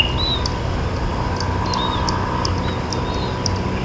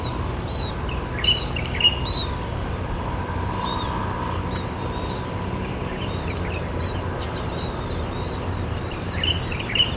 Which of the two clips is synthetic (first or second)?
second